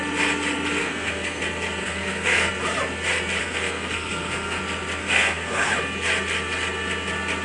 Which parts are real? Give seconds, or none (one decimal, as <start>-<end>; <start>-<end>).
0.0-0.8; 1.4-1.8; 2.5-3.4; 4.6-5.0; 5.7-7.4